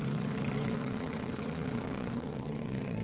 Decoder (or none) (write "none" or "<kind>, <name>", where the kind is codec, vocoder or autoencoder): vocoder, WaveNeXt